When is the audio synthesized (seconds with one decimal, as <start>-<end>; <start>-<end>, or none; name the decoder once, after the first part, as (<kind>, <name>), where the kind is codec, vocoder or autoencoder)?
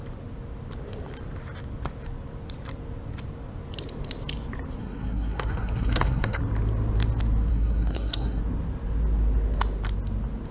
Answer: 4.8-6.4 (codec, SNAC); 7.5-8.4